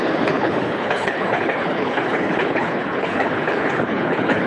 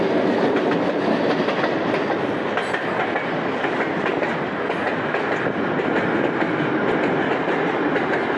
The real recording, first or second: second